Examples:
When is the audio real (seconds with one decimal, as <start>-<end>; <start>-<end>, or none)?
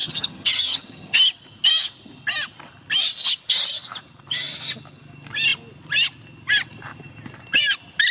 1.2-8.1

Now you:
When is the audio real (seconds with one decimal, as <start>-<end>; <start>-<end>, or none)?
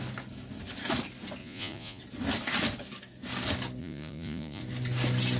0.0-1.4; 2.0-3.8; 4.6-5.4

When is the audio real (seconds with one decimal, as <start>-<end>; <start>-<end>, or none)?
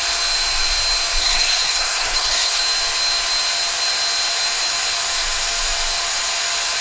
0.0-1.2; 2.6-6.8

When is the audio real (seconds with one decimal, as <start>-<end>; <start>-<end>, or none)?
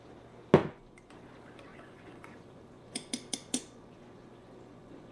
0.0-0.6; 1.1-1.7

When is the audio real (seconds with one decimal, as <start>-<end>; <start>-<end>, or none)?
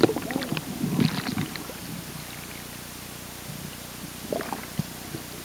0.0-5.4